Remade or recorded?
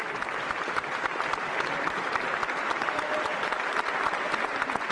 recorded